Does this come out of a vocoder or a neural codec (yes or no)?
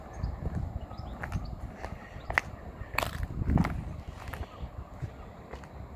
no